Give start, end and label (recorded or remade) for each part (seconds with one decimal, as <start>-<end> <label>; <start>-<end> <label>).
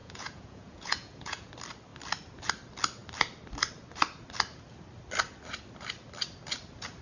0.0-1.5 remade; 1.5-7.0 recorded